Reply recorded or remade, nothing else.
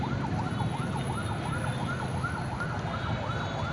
recorded